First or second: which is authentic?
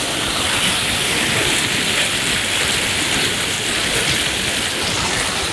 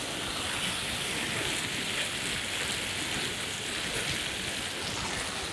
second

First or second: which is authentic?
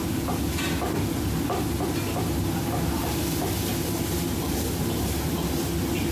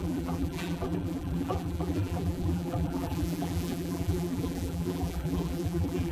first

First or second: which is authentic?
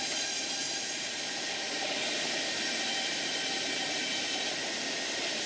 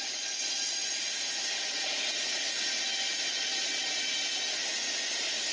second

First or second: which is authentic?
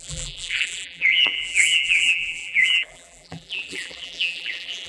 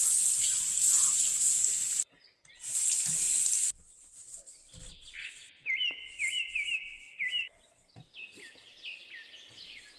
second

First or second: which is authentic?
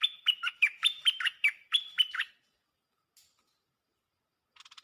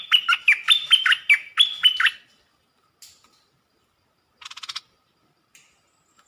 second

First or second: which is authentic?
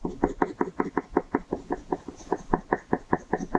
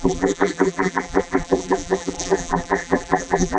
first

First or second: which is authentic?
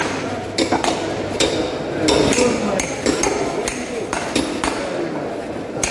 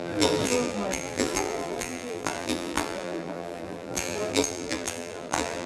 first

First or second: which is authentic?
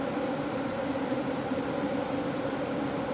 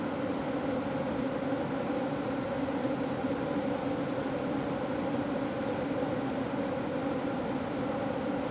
second